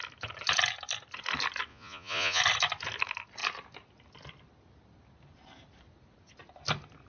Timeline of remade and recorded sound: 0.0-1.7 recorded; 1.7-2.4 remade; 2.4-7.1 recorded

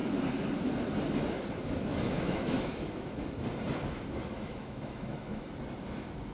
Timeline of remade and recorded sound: 0.0-1.9 recorded; 1.9-3.2 remade; 3.2-4.2 recorded; 4.2-5.5 remade; 5.5-6.3 recorded

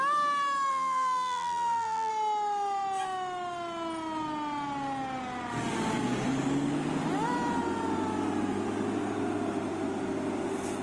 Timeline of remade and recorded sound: 0.0-0.7 recorded; 0.7-2.1 remade; 2.1-10.8 recorded